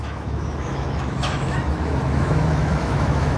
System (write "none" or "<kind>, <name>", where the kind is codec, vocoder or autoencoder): autoencoder, DAC-VAE